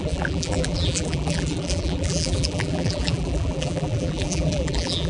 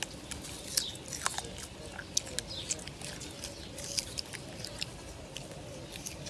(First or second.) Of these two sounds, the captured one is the second